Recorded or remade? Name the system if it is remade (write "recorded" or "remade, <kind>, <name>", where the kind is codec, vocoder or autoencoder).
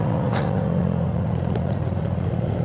remade, vocoder, Vocos